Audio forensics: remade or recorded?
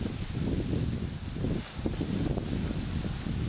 recorded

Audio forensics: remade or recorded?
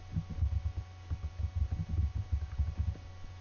recorded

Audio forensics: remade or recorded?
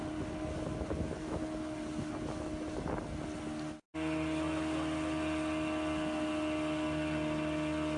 recorded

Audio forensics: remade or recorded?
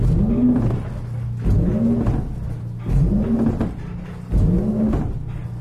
recorded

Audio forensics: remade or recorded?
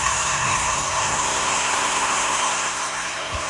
remade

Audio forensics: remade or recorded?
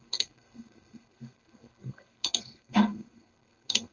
remade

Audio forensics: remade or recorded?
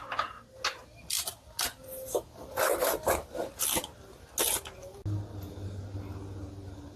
recorded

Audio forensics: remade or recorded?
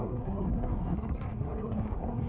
remade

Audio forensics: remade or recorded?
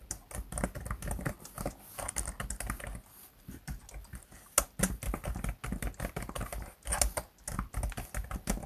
recorded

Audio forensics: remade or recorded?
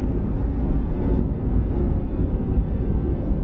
remade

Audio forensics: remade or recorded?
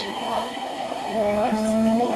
remade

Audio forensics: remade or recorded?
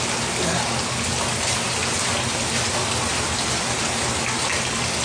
recorded